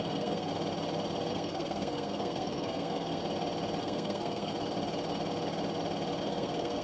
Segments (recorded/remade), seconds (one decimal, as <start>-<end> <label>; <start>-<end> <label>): 0.0-0.5 remade; 0.5-1.3 recorded; 1.3-3.2 remade; 3.2-3.8 recorded; 3.8-4.5 remade; 4.5-6.2 recorded; 6.2-6.8 remade